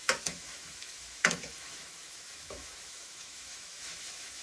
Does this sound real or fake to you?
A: fake